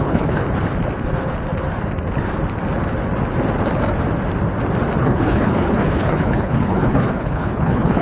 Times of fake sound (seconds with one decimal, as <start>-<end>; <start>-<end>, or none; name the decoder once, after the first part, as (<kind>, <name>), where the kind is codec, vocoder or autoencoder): 0.0-0.4 (codec, HILCodec); 5.0-8.0